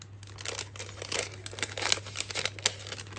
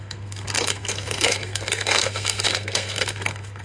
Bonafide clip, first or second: first